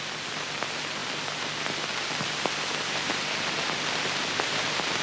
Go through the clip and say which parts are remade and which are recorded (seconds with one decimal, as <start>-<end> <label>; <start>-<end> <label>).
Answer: 0.0-5.0 recorded